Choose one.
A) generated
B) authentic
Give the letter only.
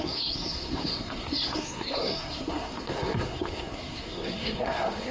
A